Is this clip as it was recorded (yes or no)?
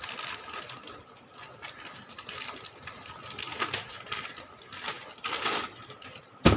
yes